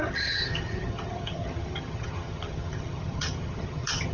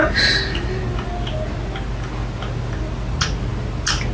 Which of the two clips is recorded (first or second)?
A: second